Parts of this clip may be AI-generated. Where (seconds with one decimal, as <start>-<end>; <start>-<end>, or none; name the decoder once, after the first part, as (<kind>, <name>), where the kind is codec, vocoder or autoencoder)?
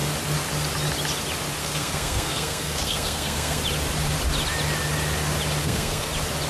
1.6-3.6 (codec, SNAC); 5.6-6.1